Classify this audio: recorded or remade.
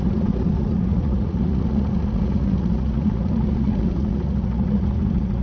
remade